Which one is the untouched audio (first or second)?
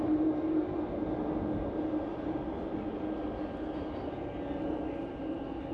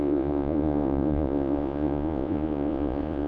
first